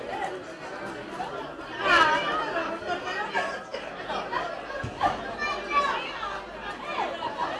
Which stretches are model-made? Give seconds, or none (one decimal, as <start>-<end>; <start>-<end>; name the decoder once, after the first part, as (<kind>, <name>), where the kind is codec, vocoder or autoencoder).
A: none